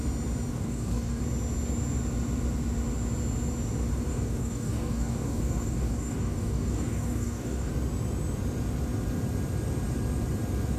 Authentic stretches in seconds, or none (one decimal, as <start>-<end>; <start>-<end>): 0.0-0.5; 1.2-4.1; 7.7-10.8